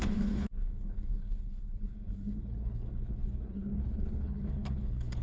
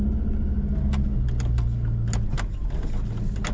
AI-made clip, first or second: first